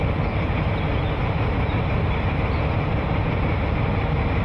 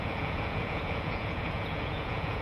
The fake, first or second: second